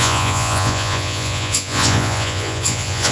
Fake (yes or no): yes